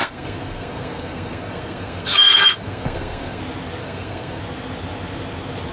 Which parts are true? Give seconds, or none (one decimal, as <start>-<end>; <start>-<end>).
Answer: 3.4-3.8; 4.4-5.7